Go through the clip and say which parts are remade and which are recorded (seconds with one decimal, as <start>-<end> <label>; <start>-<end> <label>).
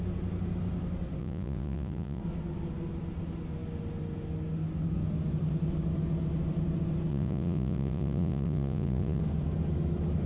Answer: 0.0-1.2 recorded; 1.2-2.2 remade; 2.2-7.1 recorded; 7.1-9.2 remade; 9.2-10.3 recorded